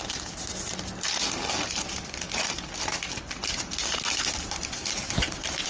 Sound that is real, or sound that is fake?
real